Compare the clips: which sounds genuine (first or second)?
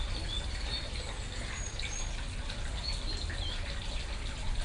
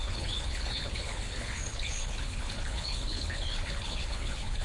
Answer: first